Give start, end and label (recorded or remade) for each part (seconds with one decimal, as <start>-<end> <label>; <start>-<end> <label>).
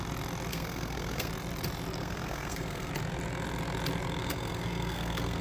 0.0-0.5 recorded; 0.5-1.3 remade; 1.3-2.0 recorded; 2.0-2.9 remade; 2.9-4.2 recorded; 4.2-5.4 remade